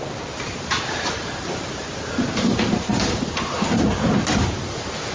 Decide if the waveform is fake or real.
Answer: fake